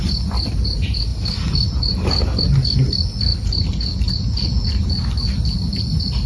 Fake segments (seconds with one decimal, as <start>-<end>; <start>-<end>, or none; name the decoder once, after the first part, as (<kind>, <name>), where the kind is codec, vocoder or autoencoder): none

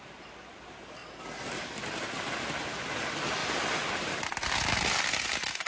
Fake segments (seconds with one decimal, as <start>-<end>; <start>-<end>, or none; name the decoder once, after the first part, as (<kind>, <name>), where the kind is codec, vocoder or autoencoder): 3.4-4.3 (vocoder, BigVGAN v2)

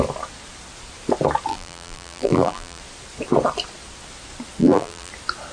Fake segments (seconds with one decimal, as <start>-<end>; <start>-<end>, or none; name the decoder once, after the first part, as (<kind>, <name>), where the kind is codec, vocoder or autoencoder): 1.5-2.8 (vocoder, BigVGAN v2); 4.6-5.1